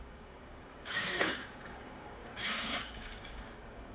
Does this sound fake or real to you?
fake